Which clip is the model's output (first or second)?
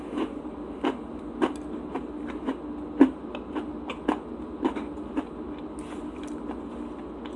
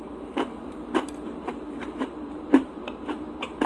second